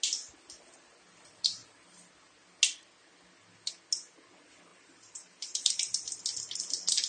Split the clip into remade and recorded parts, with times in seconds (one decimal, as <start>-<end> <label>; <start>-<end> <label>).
0.0-4.7 recorded; 4.7-6.2 remade; 6.2-7.1 recorded